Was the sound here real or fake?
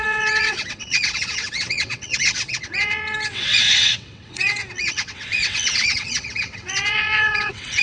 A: fake